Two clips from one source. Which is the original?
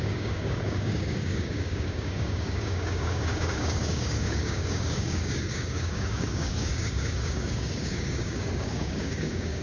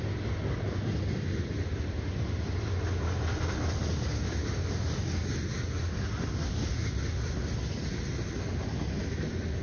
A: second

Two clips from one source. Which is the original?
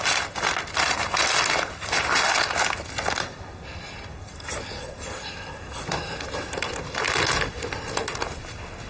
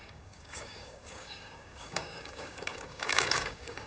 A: first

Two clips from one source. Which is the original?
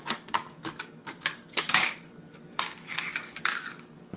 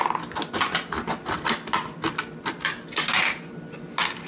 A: second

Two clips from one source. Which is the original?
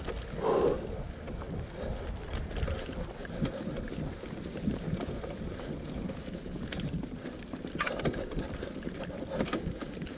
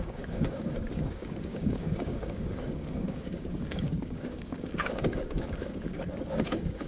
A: first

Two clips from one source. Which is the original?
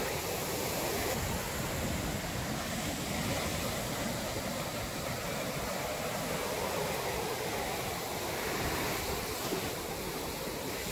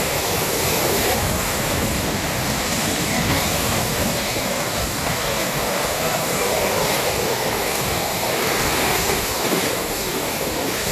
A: first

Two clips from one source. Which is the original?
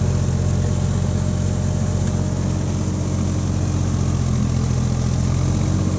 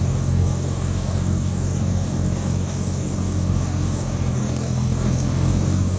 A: first